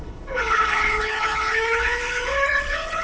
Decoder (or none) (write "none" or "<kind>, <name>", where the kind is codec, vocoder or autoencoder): codec, HILCodec